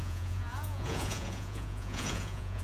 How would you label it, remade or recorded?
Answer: remade